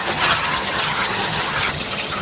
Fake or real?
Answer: fake